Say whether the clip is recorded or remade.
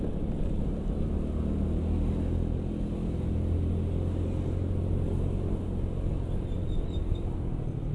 recorded